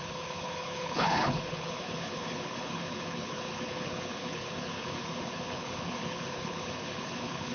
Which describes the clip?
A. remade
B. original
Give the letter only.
A